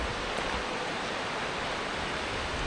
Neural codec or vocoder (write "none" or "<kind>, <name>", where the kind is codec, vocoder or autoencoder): none